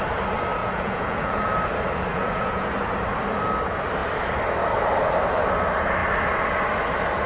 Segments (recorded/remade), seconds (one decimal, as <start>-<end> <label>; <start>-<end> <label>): 0.0-0.6 recorded; 0.6-1.5 remade; 1.5-2.1 recorded; 2.1-2.7 remade; 2.7-7.3 recorded